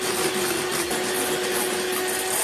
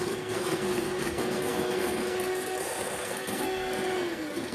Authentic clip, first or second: first